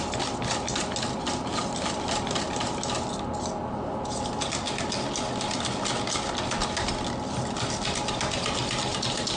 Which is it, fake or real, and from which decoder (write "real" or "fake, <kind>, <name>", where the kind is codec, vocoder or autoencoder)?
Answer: real